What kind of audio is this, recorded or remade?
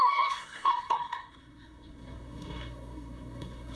remade